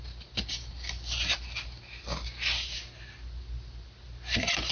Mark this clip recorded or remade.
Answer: recorded